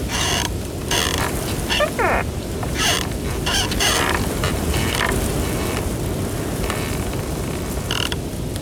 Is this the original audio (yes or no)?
no